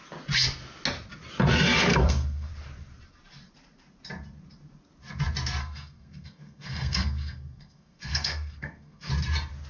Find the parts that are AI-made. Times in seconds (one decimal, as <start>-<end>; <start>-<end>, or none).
1.9-2.5; 5.6-9.1